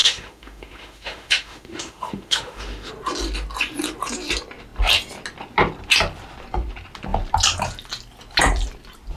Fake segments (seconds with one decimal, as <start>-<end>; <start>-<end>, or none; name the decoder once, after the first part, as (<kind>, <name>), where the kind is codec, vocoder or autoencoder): 0.0-2.9 (autoencoder, DAC-VAE)